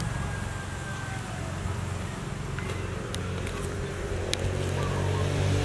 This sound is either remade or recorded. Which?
recorded